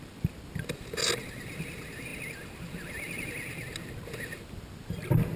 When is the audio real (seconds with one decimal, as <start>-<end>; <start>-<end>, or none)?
0.0-5.4

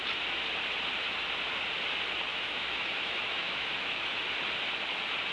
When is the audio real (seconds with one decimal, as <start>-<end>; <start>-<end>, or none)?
0.0-2.3; 4.2-5.3

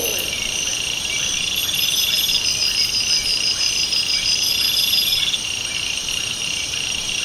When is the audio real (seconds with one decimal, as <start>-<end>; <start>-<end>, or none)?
0.0-1.6; 2.5-3.3

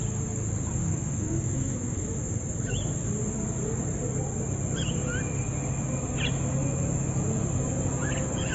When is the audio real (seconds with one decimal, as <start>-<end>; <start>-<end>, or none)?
0.0-0.8; 2.2-8.5

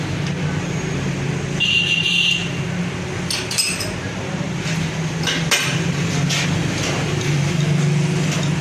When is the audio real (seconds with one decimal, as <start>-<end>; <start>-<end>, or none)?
0.0-8.6

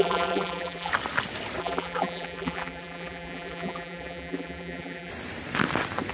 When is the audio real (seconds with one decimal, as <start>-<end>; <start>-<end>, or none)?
0.9-1.6; 5.1-6.1

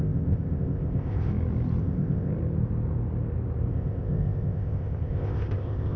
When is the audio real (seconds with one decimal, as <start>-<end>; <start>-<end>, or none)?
1.3-1.8; 2.3-3.7